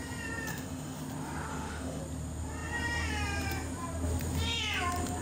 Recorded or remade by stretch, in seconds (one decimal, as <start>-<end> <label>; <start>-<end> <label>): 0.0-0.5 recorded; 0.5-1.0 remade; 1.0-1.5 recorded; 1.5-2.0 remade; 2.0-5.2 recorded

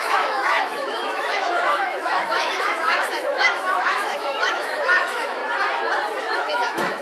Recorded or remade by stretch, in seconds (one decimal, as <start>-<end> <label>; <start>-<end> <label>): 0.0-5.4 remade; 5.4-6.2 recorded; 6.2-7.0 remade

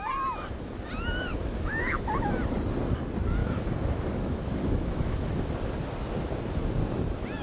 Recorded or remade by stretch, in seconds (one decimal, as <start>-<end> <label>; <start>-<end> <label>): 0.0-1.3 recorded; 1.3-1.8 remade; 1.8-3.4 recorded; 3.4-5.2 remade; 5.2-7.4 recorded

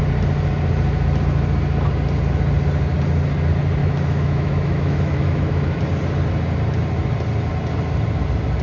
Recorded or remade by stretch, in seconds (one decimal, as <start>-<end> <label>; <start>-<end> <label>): 0.0-3.8 recorded; 3.8-5.8 remade; 5.8-8.6 recorded

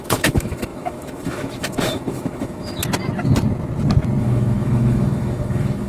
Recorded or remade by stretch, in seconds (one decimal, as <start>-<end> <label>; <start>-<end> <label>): 0.0-2.8 remade; 2.8-4.2 recorded; 4.2-5.9 remade

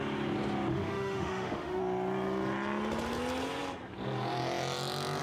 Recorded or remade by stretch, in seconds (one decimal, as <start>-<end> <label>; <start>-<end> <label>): 0.0-0.7 recorded; 0.7-1.8 remade; 1.8-5.2 recorded

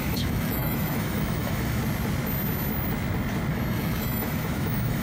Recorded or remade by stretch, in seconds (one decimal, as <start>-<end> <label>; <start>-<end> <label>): 0.0-1.8 remade; 1.8-3.5 recorded; 3.5-5.0 remade